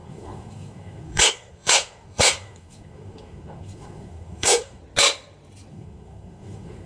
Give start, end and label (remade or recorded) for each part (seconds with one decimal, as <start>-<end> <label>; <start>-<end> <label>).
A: 0.0-4.8 remade; 4.8-5.7 recorded; 5.7-6.9 remade